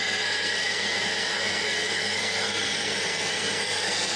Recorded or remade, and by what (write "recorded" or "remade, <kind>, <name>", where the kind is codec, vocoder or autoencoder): remade, codec, SNAC